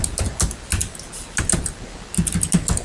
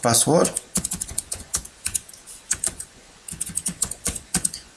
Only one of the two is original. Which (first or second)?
first